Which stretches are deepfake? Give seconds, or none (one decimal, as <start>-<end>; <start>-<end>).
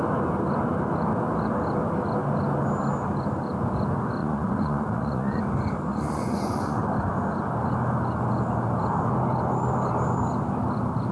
4.2-5.4; 5.9-6.8